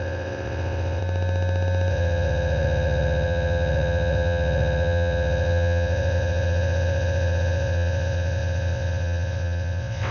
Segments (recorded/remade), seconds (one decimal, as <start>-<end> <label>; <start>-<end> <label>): 0.0-1.0 remade; 1.0-1.9 recorded; 1.9-10.1 remade